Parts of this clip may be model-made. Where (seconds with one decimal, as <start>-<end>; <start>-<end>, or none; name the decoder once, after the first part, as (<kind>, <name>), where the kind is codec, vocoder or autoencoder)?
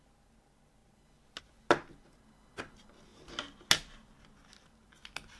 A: none